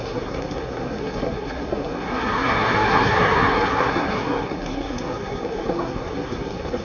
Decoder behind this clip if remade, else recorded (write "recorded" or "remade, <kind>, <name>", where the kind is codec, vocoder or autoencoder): remade, codec, SNAC